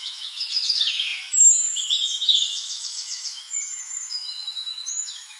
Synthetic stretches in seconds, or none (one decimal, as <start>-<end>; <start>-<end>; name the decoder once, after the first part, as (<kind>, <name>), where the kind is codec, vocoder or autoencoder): 0.0-5.4 (autoencoder, DAC-VAE)